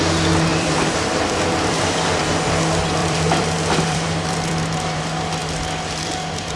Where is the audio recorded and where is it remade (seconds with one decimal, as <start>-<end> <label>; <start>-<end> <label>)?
0.0-0.5 recorded; 0.5-2.3 remade; 2.3-3.0 recorded; 3.0-5.0 remade; 5.0-5.4 recorded; 5.4-6.1 remade; 6.1-6.6 recorded

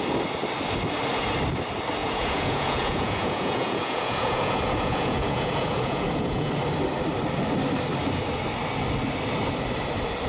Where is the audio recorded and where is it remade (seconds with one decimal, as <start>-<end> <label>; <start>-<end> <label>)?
0.0-2.0 recorded; 2.0-6.5 remade; 6.5-10.3 recorded

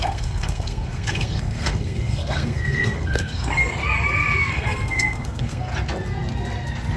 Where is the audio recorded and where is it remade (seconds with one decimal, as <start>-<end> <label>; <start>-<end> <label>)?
0.0-3.8 remade; 3.8-4.5 recorded; 4.5-5.7 remade; 5.7-7.0 recorded

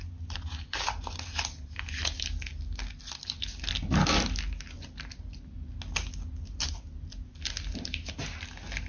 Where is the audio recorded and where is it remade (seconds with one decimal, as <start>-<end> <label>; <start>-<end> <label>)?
0.0-8.9 recorded

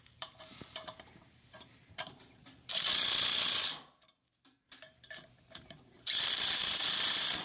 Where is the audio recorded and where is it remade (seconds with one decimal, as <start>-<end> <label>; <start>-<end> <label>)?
0.0-2.4 remade; 2.4-5.4 recorded; 5.4-7.4 remade

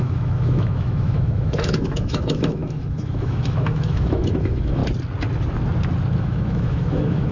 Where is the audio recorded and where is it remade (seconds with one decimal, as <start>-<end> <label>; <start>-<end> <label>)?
0.0-4.8 remade; 4.8-6.2 recorded; 6.2-7.3 remade

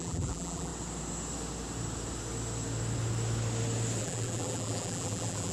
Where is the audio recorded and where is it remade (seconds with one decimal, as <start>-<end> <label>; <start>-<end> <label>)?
0.0-0.7 remade; 0.7-4.0 recorded; 4.0-5.5 remade